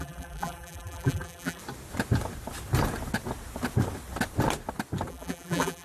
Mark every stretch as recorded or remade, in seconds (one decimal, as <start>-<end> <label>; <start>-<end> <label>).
0.0-1.6 remade; 1.6-5.1 recorded; 5.1-5.8 remade

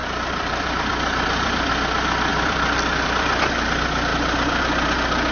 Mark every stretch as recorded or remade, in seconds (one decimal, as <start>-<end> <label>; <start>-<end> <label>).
0.0-1.7 remade; 1.7-2.3 recorded; 2.3-3.5 remade; 3.5-4.1 recorded; 4.1-4.6 remade; 4.6-5.3 recorded

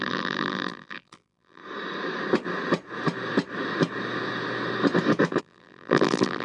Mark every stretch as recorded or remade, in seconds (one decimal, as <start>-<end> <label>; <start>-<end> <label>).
0.0-1.6 remade; 1.6-5.4 recorded; 5.4-6.4 remade

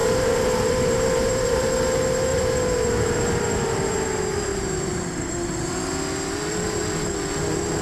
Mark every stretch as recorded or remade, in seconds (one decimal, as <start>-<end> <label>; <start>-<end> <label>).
0.0-1.7 remade; 1.7-2.3 recorded; 2.3-3.8 remade; 3.8-4.5 recorded; 4.5-5.5 remade; 5.5-7.8 recorded

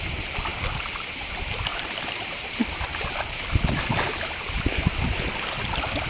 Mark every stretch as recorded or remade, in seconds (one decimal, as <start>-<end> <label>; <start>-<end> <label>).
0.0-1.7 recorded; 1.7-4.6 remade; 4.6-6.1 recorded

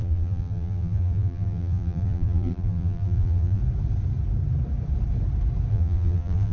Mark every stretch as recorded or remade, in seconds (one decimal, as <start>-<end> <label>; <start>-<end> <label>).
0.0-3.6 remade; 3.6-5.7 recorded; 5.7-6.5 remade

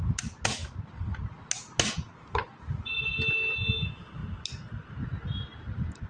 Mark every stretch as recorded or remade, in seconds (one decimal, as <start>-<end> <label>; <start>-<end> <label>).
0.0-6.1 recorded